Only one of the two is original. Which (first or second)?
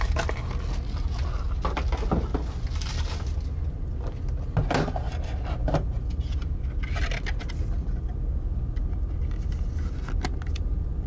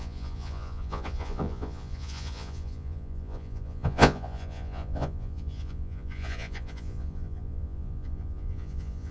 first